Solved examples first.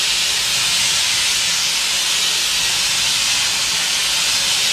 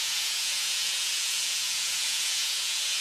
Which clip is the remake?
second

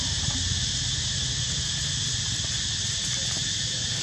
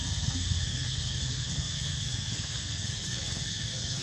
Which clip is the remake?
second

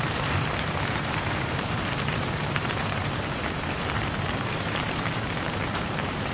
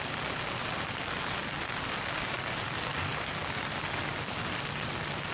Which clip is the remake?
first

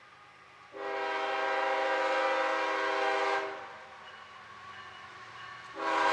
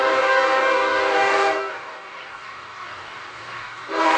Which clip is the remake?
second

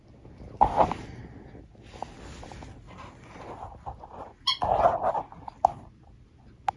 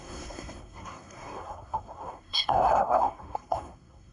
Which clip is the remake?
second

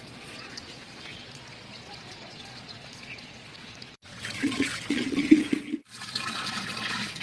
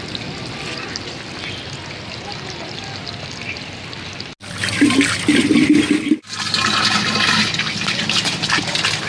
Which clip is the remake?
first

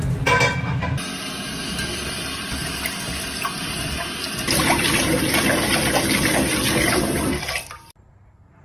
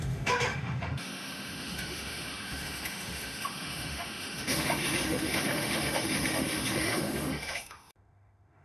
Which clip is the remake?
second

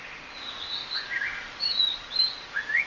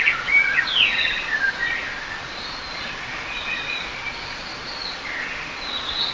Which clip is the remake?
second